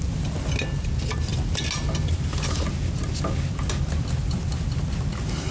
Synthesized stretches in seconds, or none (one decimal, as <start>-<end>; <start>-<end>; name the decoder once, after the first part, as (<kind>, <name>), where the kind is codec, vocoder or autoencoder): none